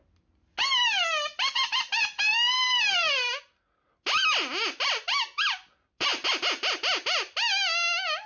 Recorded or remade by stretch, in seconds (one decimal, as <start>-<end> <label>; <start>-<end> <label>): 0.0-8.3 recorded